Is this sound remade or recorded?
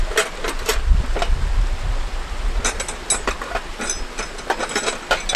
recorded